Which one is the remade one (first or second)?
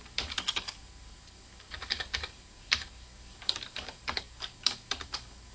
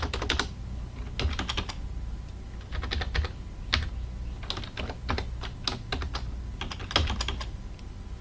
first